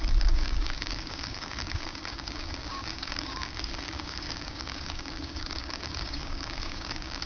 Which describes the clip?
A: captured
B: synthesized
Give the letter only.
B